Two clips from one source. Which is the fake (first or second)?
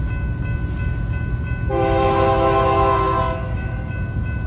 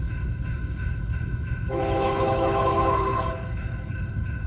second